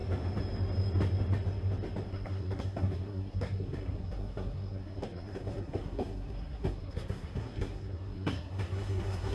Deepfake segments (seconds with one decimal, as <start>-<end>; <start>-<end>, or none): 2.1-9.3